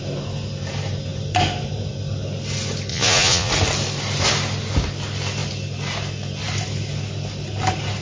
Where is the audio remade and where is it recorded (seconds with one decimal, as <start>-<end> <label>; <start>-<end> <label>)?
0.0-2.9 recorded; 2.9-3.5 remade; 3.5-8.0 recorded